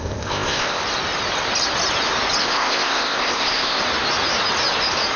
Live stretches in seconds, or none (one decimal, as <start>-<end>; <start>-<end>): 0.8-2.4; 3.8-5.2